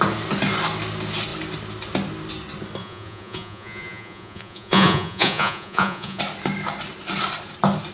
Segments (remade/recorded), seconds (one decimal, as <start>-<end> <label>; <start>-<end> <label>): 0.0-2.8 recorded; 2.8-6.2 remade; 6.2-7.9 recorded